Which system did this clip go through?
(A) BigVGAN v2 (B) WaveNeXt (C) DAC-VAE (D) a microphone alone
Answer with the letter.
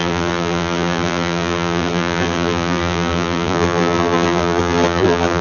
A